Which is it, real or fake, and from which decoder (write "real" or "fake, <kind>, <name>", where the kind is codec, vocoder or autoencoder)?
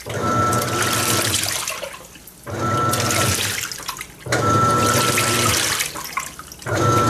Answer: real